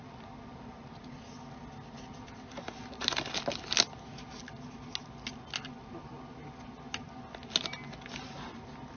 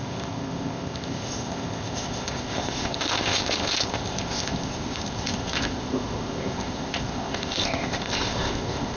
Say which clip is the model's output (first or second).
second